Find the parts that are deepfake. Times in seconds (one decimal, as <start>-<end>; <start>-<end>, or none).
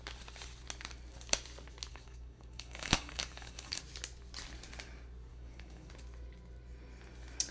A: 1.9-3.8; 5.3-5.9